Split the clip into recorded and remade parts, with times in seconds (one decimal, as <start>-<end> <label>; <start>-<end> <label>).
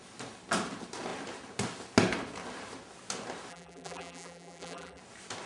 0.0-3.5 recorded; 3.5-5.0 remade; 5.0-5.5 recorded